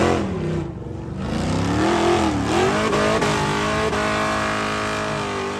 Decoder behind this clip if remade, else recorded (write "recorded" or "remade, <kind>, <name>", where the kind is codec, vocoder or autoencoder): recorded